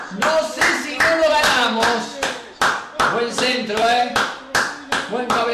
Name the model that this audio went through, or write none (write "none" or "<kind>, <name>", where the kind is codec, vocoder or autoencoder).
vocoder, BigVGAN v2